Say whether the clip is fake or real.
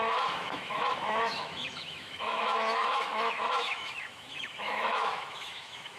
fake